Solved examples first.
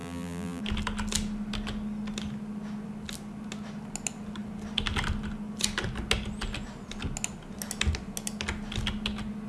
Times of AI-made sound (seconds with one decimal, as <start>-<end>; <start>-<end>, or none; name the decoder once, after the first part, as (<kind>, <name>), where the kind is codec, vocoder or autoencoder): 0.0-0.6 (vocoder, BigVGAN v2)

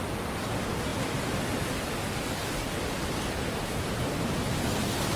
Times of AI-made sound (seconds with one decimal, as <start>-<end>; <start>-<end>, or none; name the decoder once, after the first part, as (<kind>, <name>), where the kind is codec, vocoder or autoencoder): 0.9-1.5 (vocoder, BigVGAN v2); 2.4-3.2

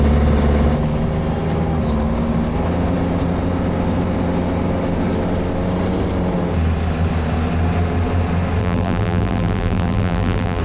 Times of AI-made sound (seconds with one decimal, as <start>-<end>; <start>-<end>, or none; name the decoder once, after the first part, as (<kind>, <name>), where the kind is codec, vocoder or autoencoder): 8.6-10.6 (vocoder, BigVGAN v2)

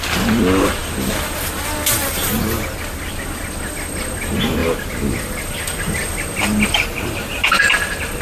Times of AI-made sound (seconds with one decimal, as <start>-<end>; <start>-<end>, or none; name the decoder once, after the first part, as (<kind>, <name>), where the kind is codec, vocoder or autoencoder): 4.6-7.7 (vocoder, BigVGAN v2)

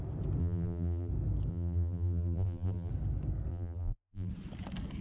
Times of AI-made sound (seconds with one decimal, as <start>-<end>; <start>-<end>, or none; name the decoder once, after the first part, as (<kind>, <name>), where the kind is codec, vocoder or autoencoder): 0.4-1.1 (vocoder, BigVGAN v2); 1.5-2.9; 3.5-4.3

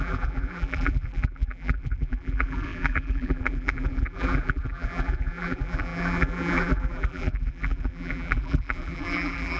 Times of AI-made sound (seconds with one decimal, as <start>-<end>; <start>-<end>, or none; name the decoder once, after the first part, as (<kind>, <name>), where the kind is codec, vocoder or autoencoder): 0.0-9.6 (vocoder, BigVGAN v2)